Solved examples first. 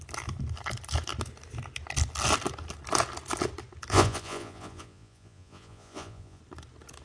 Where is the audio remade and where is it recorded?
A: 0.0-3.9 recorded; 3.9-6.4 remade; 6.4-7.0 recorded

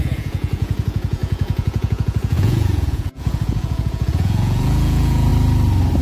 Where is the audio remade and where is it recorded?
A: 0.0-5.3 remade; 5.3-6.0 recorded

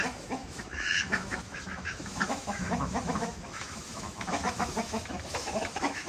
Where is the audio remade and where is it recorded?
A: 0.0-6.1 remade

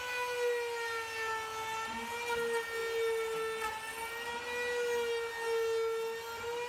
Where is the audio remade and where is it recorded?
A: 0.0-6.7 recorded

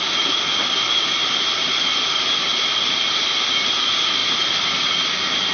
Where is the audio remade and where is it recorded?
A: 0.0-5.5 recorded